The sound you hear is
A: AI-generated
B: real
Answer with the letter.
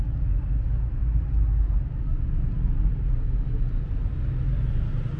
B